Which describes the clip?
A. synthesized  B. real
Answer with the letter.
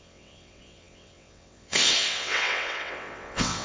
A